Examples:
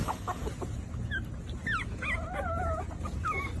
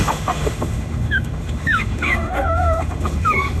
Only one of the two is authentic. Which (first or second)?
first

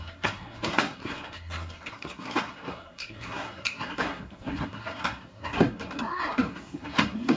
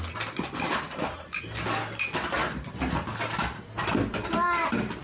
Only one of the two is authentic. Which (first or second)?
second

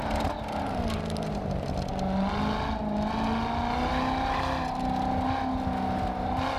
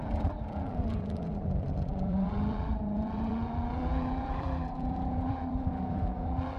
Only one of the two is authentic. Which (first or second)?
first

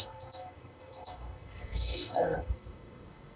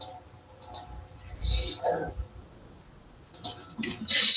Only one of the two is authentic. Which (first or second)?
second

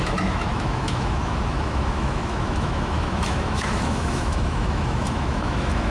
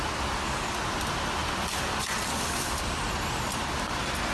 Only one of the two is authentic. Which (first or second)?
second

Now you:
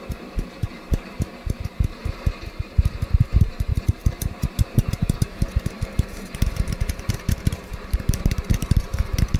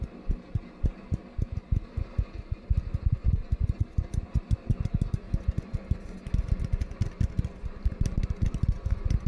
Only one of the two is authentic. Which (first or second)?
second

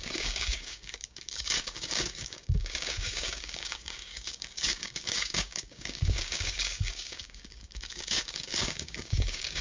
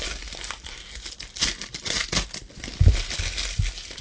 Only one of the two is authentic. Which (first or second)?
second